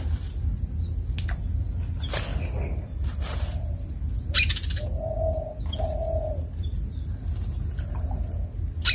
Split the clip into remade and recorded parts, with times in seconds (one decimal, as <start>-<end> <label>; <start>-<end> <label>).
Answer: 0.0-8.9 recorded